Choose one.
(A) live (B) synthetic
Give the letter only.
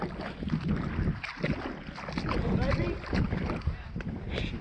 A